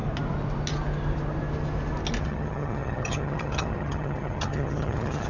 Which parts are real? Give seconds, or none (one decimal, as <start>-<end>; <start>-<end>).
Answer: 0.0-2.2